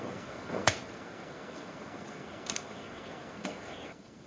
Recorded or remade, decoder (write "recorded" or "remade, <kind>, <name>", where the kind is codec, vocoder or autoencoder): remade, codec, SNAC